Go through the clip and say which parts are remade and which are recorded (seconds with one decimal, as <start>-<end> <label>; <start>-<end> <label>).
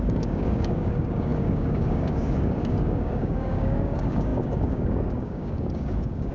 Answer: 0.0-6.3 remade